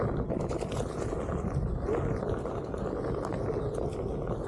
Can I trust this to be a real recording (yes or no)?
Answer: yes